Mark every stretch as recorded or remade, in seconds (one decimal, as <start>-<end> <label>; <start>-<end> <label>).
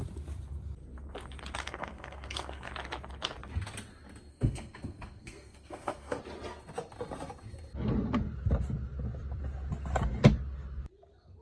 0.0-1.6 recorded; 1.6-2.7 remade; 2.7-4.3 recorded; 4.3-6.2 remade; 6.2-11.4 recorded